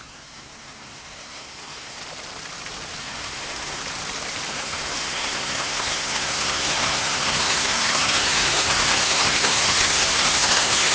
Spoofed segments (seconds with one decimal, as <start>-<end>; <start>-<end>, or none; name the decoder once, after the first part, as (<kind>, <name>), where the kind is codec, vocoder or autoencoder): 0.0-2.0 (codec, SNAC); 3.0-3.8; 4.5-10.9